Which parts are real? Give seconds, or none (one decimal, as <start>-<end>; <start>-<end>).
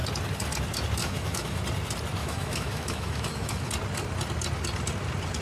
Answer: 0.0-1.0; 1.6-2.2; 3.7-5.4